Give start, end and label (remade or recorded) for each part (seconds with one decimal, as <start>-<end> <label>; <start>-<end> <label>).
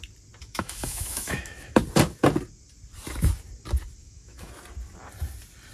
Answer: 0.0-0.4 recorded; 0.4-1.8 remade; 1.8-4.0 recorded; 4.0-4.5 remade; 4.5-5.7 recorded